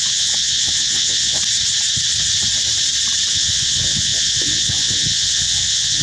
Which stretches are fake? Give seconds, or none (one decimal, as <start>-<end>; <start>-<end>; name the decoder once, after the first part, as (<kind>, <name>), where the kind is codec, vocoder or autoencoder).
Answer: 0.0-1.4 (vocoder, WaveNeXt); 3.3-6.0